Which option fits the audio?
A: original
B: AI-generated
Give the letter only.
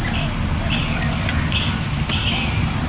A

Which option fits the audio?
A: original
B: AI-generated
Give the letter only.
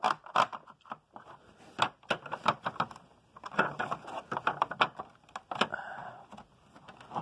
A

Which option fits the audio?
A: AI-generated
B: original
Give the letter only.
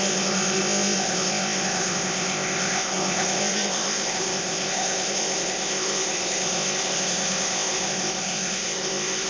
A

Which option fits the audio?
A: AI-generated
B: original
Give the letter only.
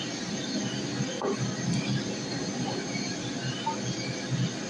B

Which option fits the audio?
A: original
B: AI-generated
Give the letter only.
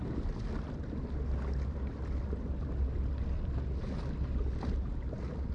A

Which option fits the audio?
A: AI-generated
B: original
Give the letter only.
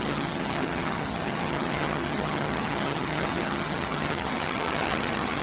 A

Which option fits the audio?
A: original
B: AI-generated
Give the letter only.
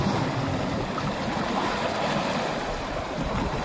A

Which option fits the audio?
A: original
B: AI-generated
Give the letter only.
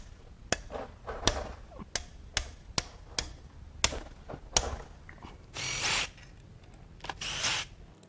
A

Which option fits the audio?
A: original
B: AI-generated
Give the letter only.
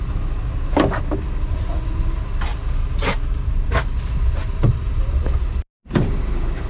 A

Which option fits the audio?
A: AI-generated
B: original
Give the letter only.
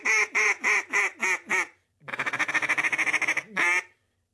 A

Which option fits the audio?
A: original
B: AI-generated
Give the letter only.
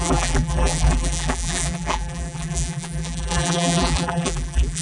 B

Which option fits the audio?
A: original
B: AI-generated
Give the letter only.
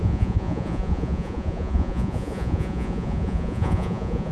B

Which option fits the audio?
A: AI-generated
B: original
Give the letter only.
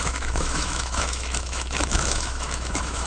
A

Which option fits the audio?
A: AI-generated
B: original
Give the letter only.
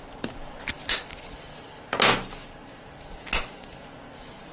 B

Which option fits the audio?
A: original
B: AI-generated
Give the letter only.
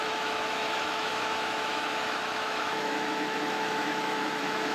B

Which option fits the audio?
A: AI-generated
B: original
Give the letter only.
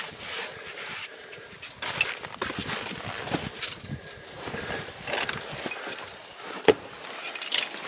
B